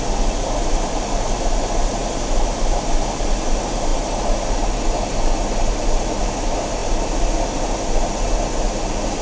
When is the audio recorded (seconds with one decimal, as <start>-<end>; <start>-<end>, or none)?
0.0-9.2